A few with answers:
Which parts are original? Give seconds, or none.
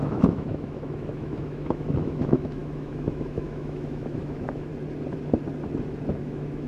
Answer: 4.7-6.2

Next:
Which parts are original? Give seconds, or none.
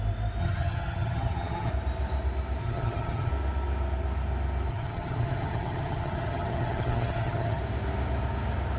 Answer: 0.0-0.4; 1.7-2.6; 3.3-4.7; 7.6-8.8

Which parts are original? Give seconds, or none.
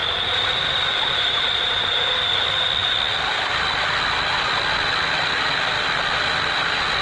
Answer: 2.4-7.0